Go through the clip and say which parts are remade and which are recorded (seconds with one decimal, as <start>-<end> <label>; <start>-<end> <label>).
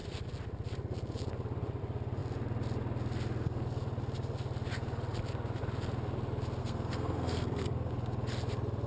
0.0-6.6 recorded; 6.6-7.9 remade; 7.9-8.9 recorded